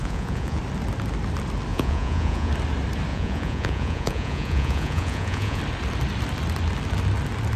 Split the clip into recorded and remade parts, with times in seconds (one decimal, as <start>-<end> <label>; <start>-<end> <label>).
0.0-0.6 remade; 0.6-1.7 recorded; 1.7-2.5 remade; 2.5-3.1 recorded; 3.1-5.6 remade; 5.6-7.6 recorded